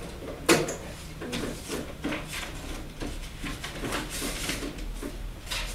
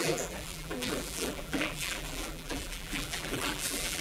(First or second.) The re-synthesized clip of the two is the second